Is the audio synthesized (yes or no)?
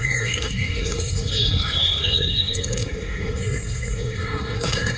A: yes